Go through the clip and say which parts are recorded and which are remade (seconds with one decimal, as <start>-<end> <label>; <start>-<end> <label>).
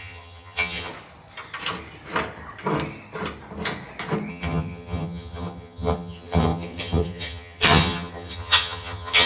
0.0-0.9 remade; 0.9-4.3 recorded; 4.3-9.3 remade